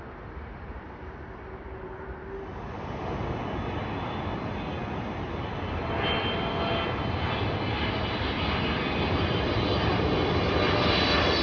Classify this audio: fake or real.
real